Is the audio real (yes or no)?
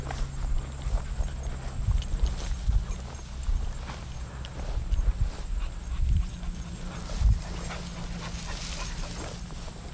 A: yes